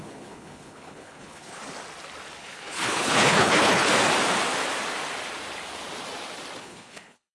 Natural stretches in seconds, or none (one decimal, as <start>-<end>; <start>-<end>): 1.6-2.4; 3.9-6.6